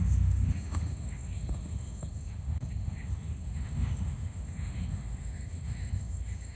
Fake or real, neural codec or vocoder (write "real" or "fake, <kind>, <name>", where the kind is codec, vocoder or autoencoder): fake, autoencoder, DAC-VAE